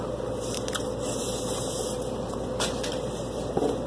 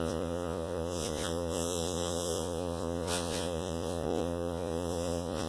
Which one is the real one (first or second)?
first